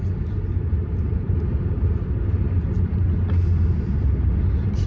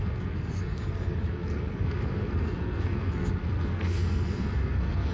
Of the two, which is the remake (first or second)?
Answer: second